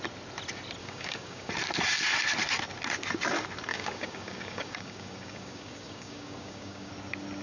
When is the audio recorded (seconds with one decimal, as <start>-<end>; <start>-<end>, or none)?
0.0-0.8; 1.5-3.7; 6.9-7.4